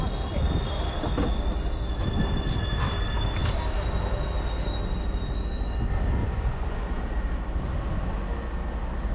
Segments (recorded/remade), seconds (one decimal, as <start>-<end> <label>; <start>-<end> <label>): 0.0-6.2 recorded; 6.2-7.0 remade; 7.0-9.1 recorded